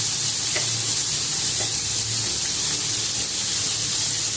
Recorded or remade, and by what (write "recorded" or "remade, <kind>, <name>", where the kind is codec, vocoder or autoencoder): recorded